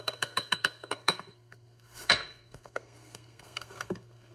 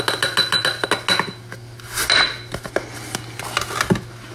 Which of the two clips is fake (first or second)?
first